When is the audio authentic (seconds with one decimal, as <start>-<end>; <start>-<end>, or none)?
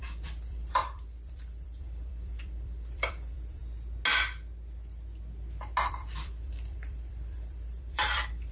3.6-5.9